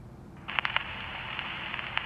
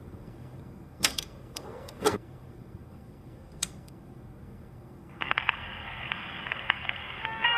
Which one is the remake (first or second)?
second